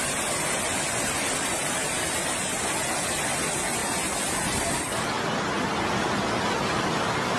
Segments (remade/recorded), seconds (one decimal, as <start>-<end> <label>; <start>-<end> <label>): 0.0-7.4 recorded